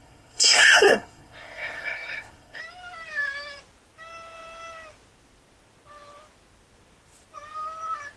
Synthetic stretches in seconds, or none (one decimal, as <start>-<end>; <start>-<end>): 0.0-2.6